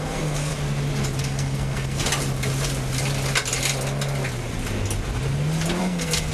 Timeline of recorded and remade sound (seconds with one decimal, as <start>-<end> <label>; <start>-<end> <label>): 0.0-0.5 remade; 0.5-1.2 recorded; 1.2-2.1 remade; 2.1-5.8 recorded; 5.8-6.3 remade